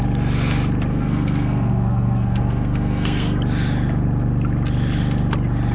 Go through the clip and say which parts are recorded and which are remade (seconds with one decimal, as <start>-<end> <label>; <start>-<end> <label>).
0.0-0.9 recorded; 0.9-3.4 remade; 3.4-5.7 recorded